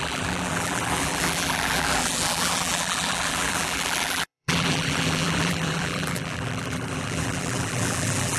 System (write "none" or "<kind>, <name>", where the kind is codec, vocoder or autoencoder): vocoder, BigVGAN v2